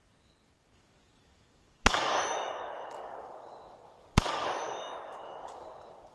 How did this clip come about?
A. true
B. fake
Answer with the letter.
B